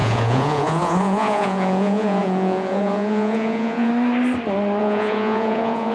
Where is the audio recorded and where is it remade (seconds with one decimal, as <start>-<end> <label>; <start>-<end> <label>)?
0.0-3.9 remade; 3.9-4.8 recorded; 4.8-5.9 remade